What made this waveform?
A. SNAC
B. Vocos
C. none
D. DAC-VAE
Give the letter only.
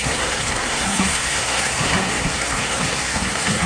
A